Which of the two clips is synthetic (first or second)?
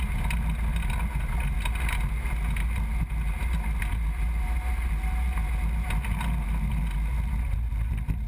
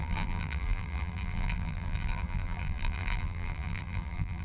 second